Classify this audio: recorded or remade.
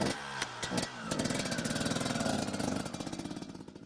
recorded